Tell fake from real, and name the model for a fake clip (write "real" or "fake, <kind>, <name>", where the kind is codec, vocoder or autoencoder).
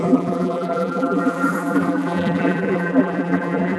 fake, vocoder, BigVGAN v2